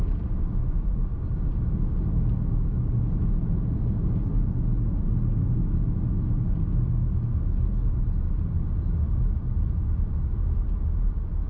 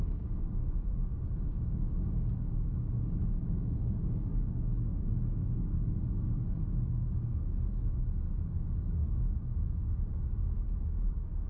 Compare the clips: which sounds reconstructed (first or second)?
second